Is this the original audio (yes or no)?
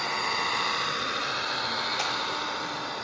no